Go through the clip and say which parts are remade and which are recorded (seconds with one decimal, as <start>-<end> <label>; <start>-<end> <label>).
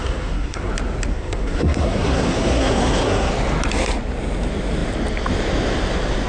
0.0-0.7 remade; 0.7-1.1 recorded; 1.1-3.3 remade; 3.3-6.3 recorded